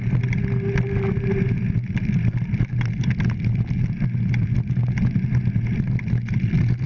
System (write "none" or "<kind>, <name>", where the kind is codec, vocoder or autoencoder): none